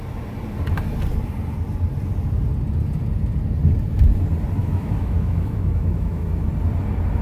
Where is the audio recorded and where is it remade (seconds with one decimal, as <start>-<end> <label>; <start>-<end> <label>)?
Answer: 0.0-4.6 recorded; 4.6-6.5 remade; 6.5-7.2 recorded